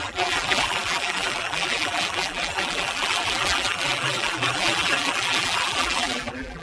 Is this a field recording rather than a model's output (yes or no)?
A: no